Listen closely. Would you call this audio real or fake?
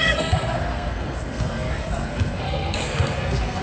fake